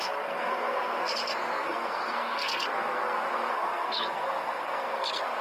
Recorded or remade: remade